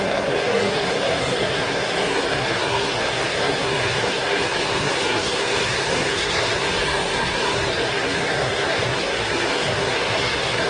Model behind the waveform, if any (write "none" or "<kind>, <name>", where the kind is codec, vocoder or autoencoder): codec, SNAC